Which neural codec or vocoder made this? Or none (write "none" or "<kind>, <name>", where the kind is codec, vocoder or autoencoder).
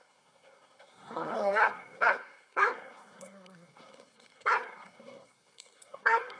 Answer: codec, SNAC